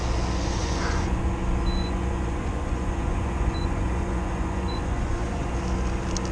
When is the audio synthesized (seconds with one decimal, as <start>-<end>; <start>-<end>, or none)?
0.6-1.2; 1.8-5.5